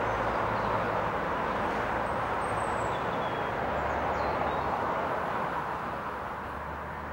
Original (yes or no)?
yes